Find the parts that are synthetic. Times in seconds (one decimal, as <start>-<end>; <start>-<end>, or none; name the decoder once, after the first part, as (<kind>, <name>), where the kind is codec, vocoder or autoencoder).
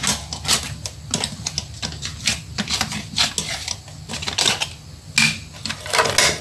none